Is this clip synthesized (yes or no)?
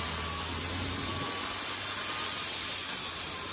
no